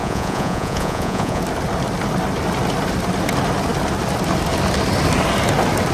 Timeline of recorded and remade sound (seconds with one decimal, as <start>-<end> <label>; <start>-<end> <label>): 0.0-1.4 remade; 1.4-5.9 recorded